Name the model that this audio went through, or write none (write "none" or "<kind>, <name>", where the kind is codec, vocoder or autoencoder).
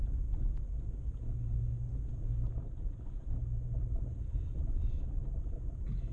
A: none